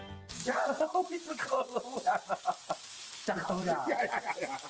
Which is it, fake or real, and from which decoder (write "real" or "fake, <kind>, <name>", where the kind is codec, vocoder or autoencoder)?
real